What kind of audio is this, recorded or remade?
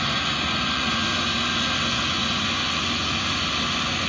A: remade